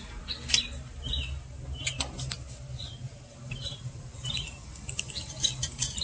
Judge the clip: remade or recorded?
remade